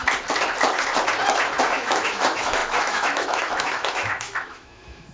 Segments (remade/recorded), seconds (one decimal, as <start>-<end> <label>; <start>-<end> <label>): 0.0-1.6 recorded; 1.6-5.1 remade